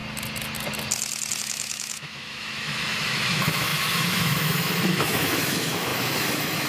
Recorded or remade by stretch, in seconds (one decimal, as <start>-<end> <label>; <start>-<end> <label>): 0.0-1.4 recorded; 1.4-6.7 remade